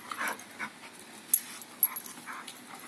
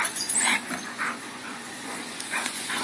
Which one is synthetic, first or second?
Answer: second